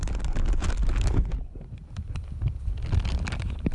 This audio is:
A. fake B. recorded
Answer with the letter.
B